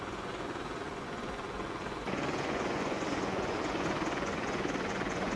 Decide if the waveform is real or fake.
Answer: fake